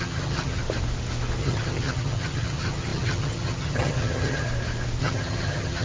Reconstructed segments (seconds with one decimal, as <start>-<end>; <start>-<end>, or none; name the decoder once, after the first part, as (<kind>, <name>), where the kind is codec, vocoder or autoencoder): 0.0-0.6 (vocoder, HiFi-GAN); 1.4-4.5; 5.0-5.8